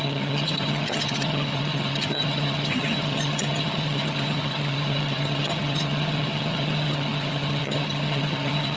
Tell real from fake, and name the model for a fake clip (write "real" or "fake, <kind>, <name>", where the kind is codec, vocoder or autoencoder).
fake, vocoder, HiFi-GAN